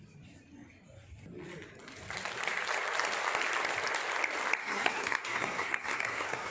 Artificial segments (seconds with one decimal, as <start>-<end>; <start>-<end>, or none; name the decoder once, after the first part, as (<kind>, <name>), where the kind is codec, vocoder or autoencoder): 4.6-6.5 (codec, SNAC)